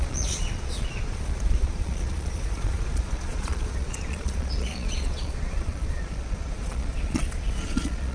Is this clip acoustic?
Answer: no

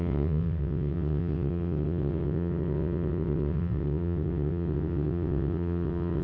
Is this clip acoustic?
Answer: no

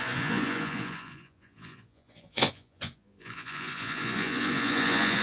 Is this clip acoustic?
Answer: no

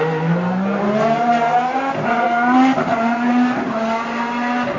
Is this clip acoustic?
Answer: yes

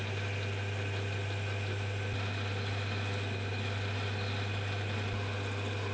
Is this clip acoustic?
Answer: yes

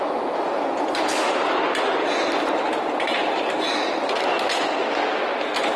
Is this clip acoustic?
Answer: yes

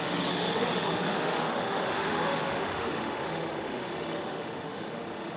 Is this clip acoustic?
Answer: no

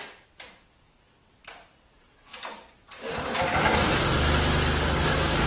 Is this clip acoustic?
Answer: yes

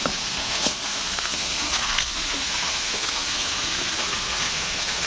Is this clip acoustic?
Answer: no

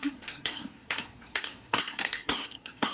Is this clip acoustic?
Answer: no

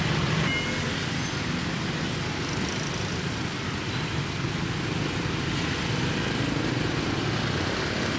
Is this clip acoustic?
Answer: yes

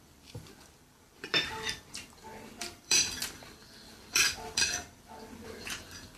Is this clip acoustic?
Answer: no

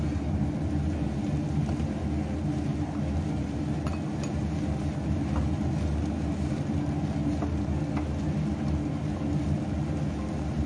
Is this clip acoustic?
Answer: yes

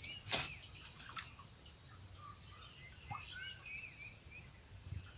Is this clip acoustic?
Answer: yes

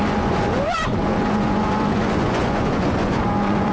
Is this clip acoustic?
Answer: no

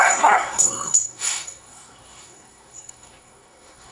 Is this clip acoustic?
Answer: no